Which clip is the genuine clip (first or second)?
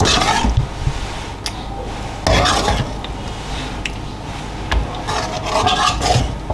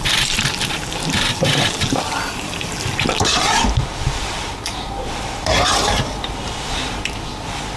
first